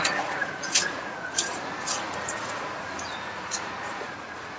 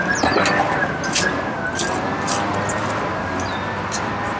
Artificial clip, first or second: first